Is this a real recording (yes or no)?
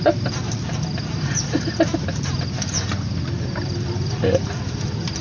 yes